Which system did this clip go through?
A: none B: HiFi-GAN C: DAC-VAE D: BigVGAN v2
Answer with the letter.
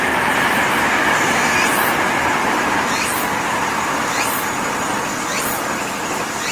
A